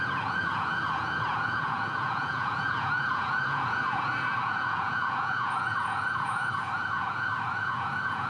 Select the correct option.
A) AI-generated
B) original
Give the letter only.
A